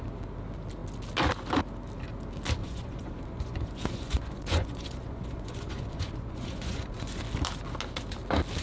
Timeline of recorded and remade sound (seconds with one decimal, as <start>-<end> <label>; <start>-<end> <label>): 0.0-2.6 recorded; 2.6-7.2 remade; 7.2-8.6 recorded